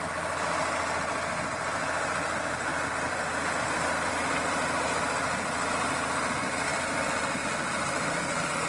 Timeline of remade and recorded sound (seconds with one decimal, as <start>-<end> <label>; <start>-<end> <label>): 0.0-8.7 recorded